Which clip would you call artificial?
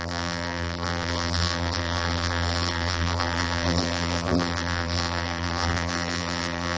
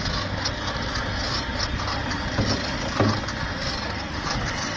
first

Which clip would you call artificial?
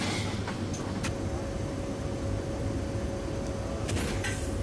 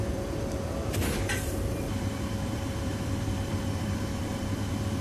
second